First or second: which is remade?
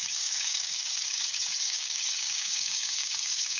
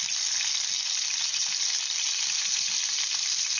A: first